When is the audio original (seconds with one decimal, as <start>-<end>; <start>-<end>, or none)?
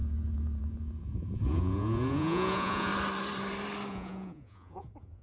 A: 2.9-3.9